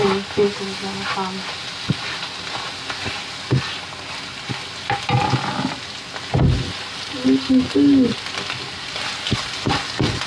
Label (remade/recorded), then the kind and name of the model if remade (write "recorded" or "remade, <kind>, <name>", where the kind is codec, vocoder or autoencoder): recorded